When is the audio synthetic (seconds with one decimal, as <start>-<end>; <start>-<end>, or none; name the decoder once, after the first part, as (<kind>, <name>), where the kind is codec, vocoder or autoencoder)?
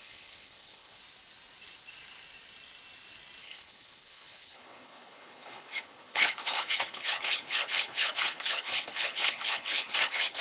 0.0-1.0 (codec, HILCodec); 3.4-10.4